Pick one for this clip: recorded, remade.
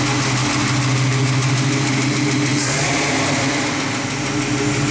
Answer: recorded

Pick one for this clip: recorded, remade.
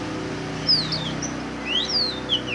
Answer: recorded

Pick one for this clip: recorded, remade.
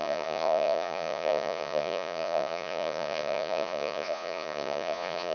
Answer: remade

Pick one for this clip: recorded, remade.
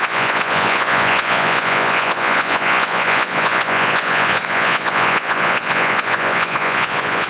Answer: remade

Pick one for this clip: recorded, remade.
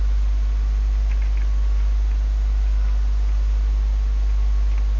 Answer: recorded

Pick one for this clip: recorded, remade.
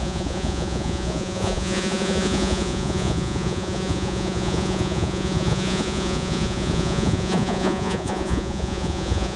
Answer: remade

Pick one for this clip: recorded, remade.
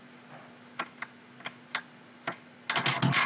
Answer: recorded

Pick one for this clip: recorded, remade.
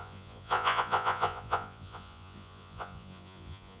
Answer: remade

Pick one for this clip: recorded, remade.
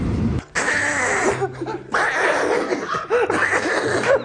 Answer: recorded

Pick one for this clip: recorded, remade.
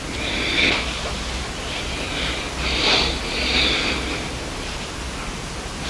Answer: recorded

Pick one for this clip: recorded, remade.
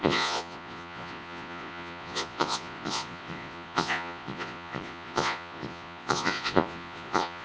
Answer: remade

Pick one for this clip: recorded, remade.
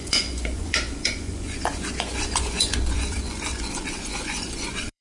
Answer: remade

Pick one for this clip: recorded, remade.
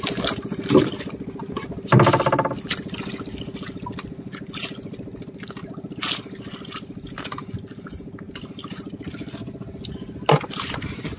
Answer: recorded